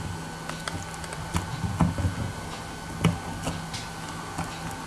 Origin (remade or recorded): recorded